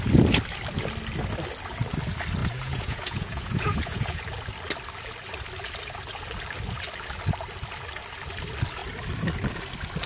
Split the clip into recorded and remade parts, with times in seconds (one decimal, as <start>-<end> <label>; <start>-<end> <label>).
0.0-2.4 recorded; 2.4-4.2 remade; 4.2-10.1 recorded